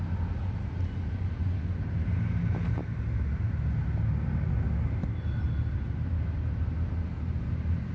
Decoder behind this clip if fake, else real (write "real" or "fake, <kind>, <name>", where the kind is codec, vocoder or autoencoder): real